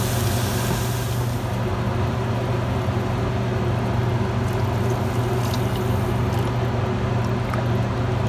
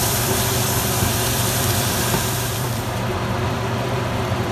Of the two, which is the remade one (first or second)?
second